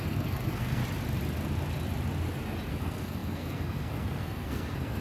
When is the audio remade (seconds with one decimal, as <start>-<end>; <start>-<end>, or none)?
0.0-0.8; 2.7-5.0